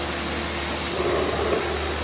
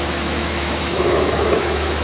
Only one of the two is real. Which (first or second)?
first